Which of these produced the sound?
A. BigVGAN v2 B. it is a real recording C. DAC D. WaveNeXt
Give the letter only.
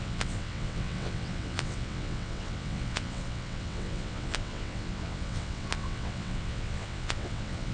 D